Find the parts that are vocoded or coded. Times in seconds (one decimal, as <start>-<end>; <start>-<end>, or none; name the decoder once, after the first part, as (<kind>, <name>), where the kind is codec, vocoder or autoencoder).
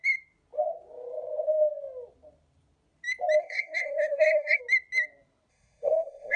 3.4-4.6 (codec, SNAC); 5.5-6.4